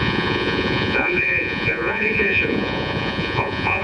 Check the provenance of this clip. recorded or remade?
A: remade